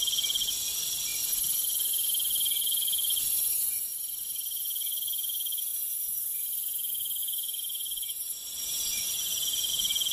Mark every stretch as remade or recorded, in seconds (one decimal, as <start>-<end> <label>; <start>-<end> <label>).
0.0-5.7 recorded; 5.7-6.5 remade; 6.5-7.2 recorded; 7.2-9.7 remade; 9.7-10.1 recorded